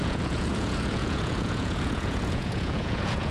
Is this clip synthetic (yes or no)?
yes